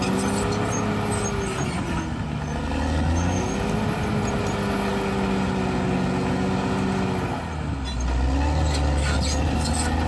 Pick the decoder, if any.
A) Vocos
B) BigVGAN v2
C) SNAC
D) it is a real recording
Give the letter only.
D